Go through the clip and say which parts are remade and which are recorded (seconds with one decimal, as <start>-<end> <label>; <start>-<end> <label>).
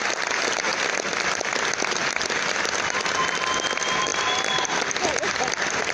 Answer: 0.0-5.9 recorded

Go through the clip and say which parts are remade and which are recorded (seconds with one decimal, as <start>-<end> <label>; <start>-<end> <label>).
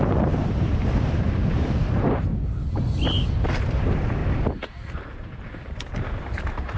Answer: 0.0-2.3 remade; 2.3-3.8 recorded; 3.8-4.2 remade; 4.2-5.0 recorded; 5.0-6.8 remade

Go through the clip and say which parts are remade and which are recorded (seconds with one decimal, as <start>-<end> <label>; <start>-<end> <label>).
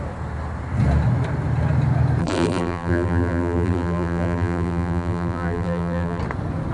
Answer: 0.0-2.2 recorded; 2.2-6.2 remade; 6.2-6.7 recorded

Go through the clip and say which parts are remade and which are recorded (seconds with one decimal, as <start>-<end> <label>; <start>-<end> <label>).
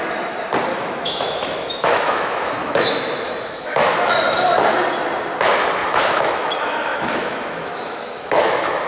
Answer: 0.0-0.7 recorded; 0.7-4.1 remade; 4.1-5.8 recorded; 5.8-8.9 remade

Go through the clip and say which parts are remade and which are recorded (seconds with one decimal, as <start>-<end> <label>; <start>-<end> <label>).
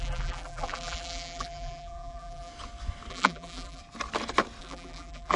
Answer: 0.0-2.5 remade; 2.5-3.1 recorded; 3.1-3.8 remade; 3.8-4.6 recorded; 4.6-5.4 remade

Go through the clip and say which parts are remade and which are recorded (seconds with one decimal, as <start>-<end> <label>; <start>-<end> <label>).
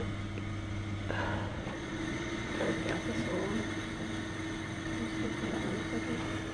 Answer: 0.0-1.5 recorded; 1.5-2.6 remade; 2.6-5.2 recorded; 5.2-5.8 remade; 5.8-6.5 recorded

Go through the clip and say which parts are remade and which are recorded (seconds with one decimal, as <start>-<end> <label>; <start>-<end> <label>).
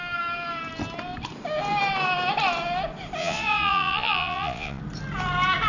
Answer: 0.0-3.2 recorded; 3.2-4.8 remade; 4.8-5.7 recorded